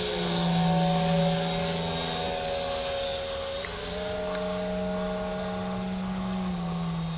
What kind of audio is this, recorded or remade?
recorded